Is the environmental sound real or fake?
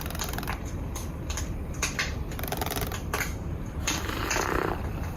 fake